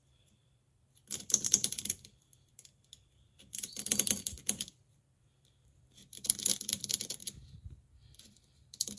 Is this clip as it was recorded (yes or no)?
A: no